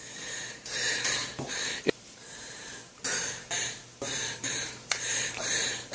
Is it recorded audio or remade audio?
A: remade